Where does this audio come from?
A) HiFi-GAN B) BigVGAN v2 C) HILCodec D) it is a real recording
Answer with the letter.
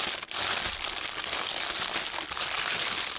B